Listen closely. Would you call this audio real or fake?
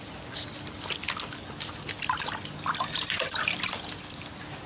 real